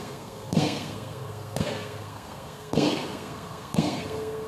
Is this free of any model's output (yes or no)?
no